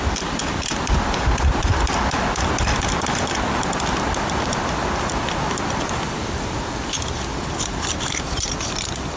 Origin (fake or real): fake